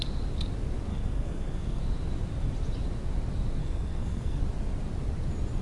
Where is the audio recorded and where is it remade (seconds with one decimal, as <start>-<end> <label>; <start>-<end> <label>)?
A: 0.0-0.9 recorded; 0.9-1.8 remade; 1.8-3.6 recorded; 3.6-4.4 remade; 4.4-5.6 recorded